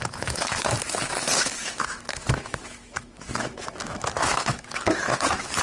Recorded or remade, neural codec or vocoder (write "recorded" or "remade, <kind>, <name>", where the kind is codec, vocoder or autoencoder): remade, autoencoder, DAC-VAE